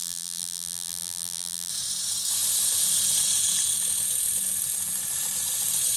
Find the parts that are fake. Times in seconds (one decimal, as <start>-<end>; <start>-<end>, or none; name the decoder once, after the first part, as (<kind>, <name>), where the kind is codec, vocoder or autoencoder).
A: 0.0-1.7 (vocoder, BigVGAN v2)